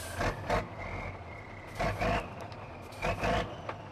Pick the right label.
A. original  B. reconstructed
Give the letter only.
A